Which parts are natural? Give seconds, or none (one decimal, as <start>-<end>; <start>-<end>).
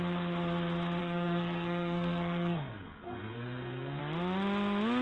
0.0-1.0; 4.0-5.0